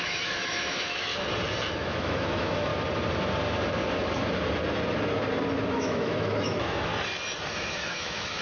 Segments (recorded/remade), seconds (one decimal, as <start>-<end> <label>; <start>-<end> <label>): 0.0-1.1 remade; 1.1-1.7 recorded; 1.7-2.7 remade; 2.7-5.7 recorded; 5.7-6.9 remade; 6.9-7.5 recorded; 7.5-8.4 remade